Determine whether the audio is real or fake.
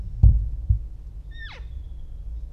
real